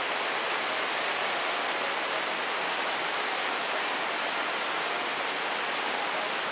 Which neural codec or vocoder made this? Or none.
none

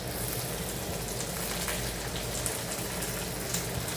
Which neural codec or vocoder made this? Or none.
none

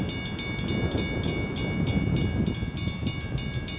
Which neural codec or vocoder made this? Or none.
none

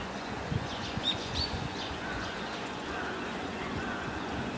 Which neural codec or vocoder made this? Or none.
vocoder, Vocos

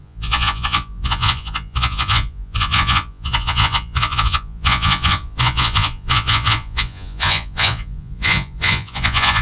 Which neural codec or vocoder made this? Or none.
vocoder, Vocos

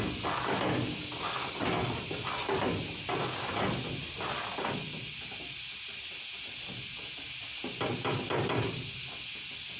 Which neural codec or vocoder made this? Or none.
none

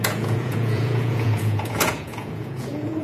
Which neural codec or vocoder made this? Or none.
vocoder, Vocos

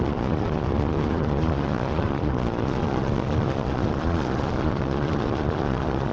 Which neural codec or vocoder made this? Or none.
vocoder, Vocos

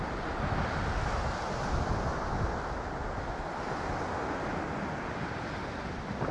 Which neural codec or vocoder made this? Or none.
none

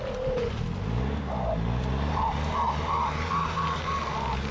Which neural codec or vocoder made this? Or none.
none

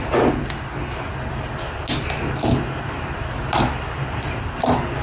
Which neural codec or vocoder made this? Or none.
none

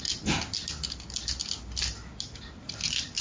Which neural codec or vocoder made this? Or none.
none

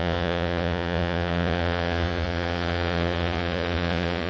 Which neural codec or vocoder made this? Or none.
vocoder, Vocos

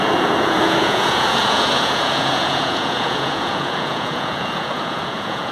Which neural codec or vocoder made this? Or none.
vocoder, Vocos